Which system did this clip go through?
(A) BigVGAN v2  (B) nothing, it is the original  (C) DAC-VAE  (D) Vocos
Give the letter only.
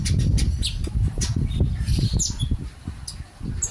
B